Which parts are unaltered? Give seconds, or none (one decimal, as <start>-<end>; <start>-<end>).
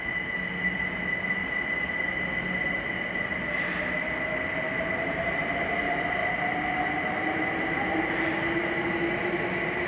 0.0-9.9